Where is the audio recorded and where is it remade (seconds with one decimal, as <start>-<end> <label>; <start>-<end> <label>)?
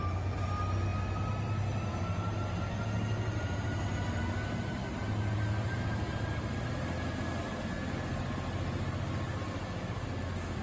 0.0-10.6 recorded